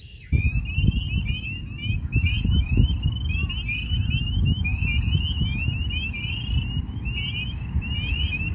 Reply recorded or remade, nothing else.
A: recorded